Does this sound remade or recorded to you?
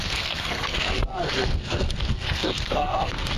remade